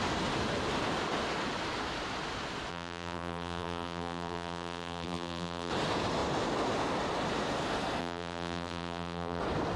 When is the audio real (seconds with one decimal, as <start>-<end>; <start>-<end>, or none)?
0.0-2.7; 5.7-8.0; 9.4-9.8